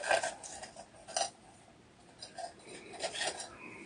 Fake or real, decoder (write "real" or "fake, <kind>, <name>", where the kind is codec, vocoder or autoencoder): real